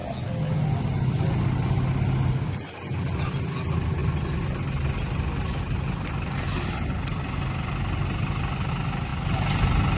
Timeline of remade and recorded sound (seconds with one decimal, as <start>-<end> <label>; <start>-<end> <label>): 0.0-10.0 recorded

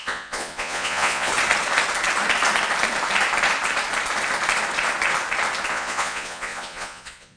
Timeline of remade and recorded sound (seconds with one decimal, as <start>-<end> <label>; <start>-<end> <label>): 0.0-1.3 remade; 1.3-5.7 recorded; 5.7-7.4 remade

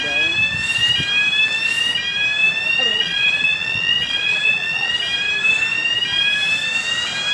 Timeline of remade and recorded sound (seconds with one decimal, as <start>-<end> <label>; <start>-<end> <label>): 0.0-2.9 recorded; 2.9-4.9 remade; 4.9-7.3 recorded